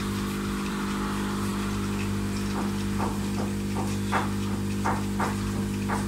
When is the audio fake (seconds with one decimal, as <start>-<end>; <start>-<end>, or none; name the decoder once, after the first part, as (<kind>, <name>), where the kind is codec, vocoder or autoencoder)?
0.0-6.1 (vocoder, BigVGAN v2)